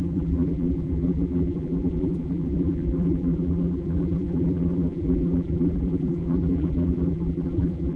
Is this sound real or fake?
fake